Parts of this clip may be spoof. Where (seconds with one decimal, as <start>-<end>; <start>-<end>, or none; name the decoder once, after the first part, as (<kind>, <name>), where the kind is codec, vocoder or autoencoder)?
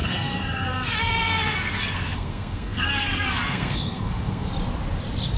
0.0-4.5 (codec, SNAC)